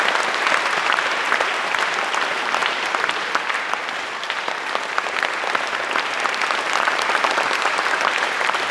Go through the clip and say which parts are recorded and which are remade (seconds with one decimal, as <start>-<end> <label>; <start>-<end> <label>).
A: 0.0-8.7 recorded